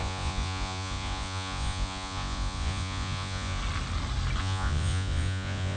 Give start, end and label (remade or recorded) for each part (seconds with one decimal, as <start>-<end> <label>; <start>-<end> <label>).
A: 0.0-3.6 remade; 3.6-4.4 recorded; 4.4-5.8 remade

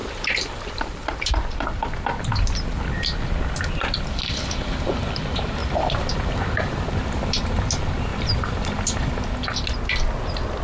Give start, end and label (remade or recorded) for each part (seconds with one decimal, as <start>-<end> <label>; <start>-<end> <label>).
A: 0.0-2.8 remade; 2.8-5.6 recorded; 5.6-6.8 remade; 6.8-8.1 recorded; 8.1-9.1 remade; 9.1-10.6 recorded

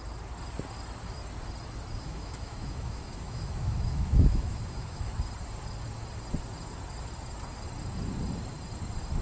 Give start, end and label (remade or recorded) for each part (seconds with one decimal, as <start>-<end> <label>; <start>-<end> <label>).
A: 0.0-2.0 recorded; 2.0-5.1 remade; 5.1-9.2 recorded

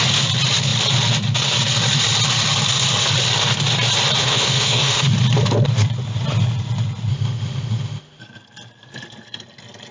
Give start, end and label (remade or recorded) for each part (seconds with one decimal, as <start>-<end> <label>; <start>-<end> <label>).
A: 0.0-4.2 recorded; 4.2-5.1 remade; 5.1-7.1 recorded; 7.1-8.2 remade; 8.2-9.9 recorded

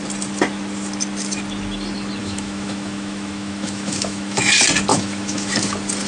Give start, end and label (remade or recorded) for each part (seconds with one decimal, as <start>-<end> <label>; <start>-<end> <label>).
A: 0.0-2.2 recorded; 2.2-4.4 remade; 4.4-4.9 recorded; 4.9-5.5 remade; 5.5-6.1 recorded